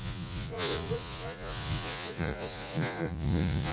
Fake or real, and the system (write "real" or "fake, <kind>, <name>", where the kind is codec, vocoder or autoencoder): fake, vocoder, Vocos